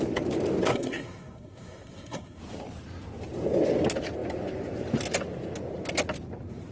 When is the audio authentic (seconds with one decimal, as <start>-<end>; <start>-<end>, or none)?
0.0-0.7; 2.4-6.7